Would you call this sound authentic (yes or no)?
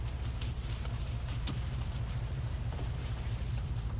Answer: no